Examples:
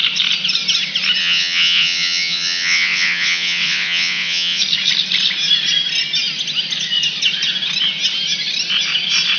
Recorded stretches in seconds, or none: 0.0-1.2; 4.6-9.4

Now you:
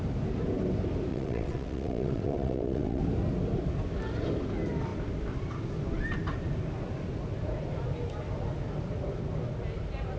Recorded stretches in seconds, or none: 0.0-1.1; 3.0-10.2

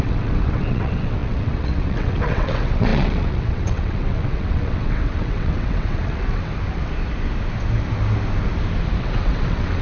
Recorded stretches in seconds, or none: 6.5-9.0

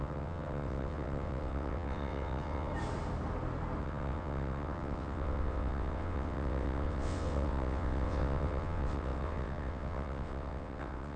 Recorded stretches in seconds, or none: 2.7-3.8